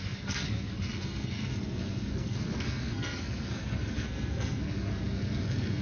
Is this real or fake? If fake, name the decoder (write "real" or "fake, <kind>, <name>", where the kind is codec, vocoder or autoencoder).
fake, codec, SNAC